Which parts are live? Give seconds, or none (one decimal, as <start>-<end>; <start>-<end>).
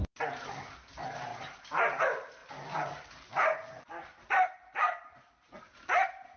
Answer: 0.0-6.4